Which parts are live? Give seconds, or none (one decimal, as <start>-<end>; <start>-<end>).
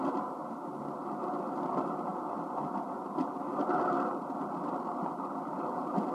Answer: 0.0-6.1